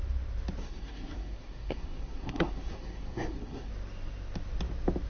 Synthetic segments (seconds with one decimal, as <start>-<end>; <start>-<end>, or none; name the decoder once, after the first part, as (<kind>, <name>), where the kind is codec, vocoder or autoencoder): 0.6-3.7 (codec, SNAC)